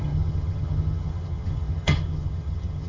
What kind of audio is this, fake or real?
fake